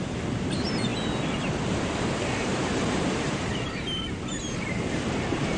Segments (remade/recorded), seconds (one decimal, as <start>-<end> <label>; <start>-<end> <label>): 0.0-5.6 recorded